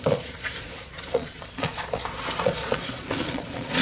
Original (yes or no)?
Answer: no